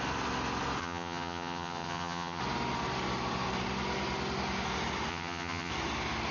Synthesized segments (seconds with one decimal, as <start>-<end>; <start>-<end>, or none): 0.8-2.4; 5.1-5.7